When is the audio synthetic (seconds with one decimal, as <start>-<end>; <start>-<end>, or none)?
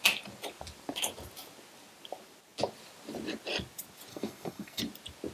4.1-4.8